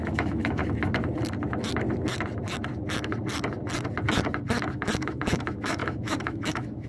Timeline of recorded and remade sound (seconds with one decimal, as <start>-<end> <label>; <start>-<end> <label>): 0.0-0.6 remade; 0.6-4.7 recorded; 4.7-6.9 remade